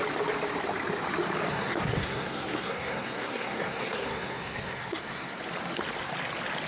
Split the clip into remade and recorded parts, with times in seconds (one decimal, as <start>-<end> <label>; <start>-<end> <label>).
0.0-1.5 recorded; 1.5-5.4 remade; 5.4-6.7 recorded